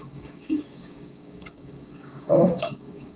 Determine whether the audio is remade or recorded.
remade